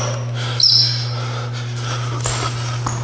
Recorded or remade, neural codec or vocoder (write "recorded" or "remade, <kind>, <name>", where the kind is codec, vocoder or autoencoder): recorded